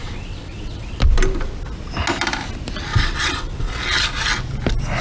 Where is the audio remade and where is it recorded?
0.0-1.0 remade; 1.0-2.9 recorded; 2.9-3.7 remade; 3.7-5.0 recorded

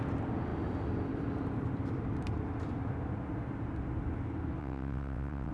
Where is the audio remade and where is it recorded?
0.0-4.6 recorded; 4.6-5.5 remade

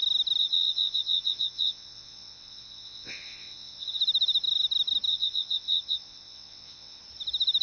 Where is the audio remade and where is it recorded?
0.0-0.4 recorded; 0.4-4.0 remade; 4.0-5.1 recorded; 5.1-7.0 remade; 7.0-7.6 recorded